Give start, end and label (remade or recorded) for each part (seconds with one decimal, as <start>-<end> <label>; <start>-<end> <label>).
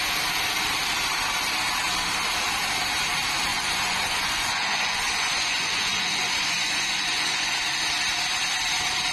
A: 0.0-3.5 recorded; 3.5-7.6 remade; 7.6-9.1 recorded